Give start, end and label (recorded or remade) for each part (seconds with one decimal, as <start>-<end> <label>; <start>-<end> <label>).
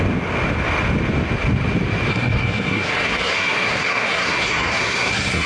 0.0-2.1 recorded; 2.1-5.5 remade